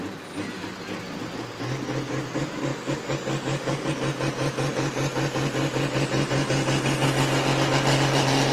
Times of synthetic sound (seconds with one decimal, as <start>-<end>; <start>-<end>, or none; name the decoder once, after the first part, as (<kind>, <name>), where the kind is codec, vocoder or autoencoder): 2.7-3.9 (codec, DAC)